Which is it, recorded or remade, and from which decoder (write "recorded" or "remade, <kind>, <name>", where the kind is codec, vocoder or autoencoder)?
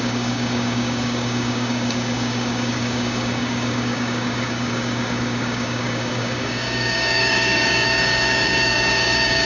remade, codec, DAC